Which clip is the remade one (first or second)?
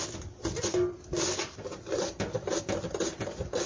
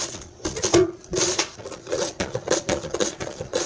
second